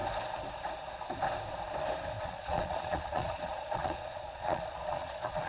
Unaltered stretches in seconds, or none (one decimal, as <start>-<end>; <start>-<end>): 0.0-2.2